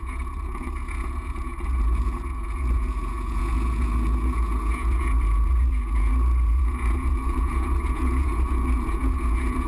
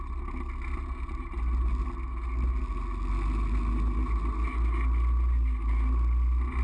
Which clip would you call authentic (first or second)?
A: second